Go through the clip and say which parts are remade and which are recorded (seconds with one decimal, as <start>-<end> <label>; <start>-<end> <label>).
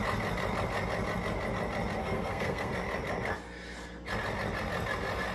0.0-2.0 recorded; 2.0-2.7 remade; 2.7-5.3 recorded